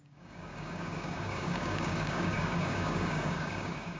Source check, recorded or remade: remade